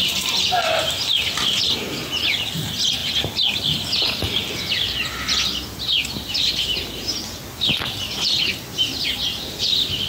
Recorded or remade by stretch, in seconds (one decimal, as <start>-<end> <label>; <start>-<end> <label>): 0.0-10.1 recorded

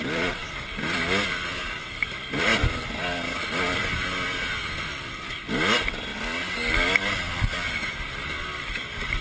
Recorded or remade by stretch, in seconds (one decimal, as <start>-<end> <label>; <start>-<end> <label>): 0.0-6.1 remade; 6.1-7.7 recorded; 7.7-9.2 remade

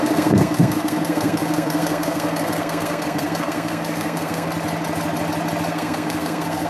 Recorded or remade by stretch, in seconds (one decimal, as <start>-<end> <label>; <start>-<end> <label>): 0.0-4.5 remade; 4.5-5.7 recorded; 5.7-6.7 remade

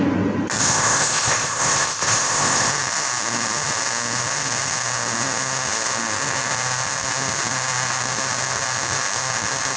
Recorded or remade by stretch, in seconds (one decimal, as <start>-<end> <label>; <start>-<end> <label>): 0.0-0.6 recorded; 0.6-2.7 remade; 2.7-9.8 recorded